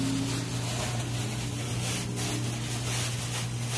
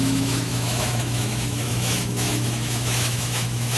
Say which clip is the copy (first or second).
second